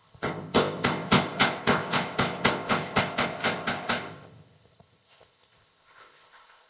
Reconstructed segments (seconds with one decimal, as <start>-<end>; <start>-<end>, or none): 0.0-6.7